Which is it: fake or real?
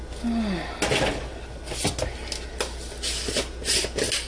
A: real